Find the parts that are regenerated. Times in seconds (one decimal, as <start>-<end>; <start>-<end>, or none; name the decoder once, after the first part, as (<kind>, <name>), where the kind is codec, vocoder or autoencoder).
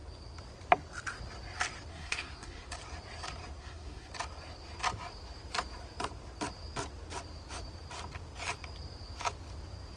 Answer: 1.9-2.7 (codec, SNAC); 3.6-4.1